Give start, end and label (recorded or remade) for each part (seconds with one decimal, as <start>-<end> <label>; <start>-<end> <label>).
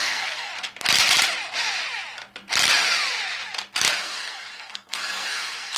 0.0-0.5 remade; 0.5-4.0 recorded; 4.0-5.8 remade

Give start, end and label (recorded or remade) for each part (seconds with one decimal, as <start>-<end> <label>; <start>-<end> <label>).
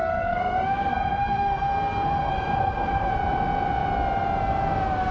0.0-3.1 remade; 3.1-5.1 recorded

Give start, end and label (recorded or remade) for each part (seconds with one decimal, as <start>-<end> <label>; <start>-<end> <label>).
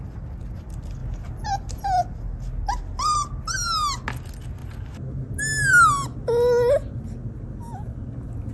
0.0-8.5 recorded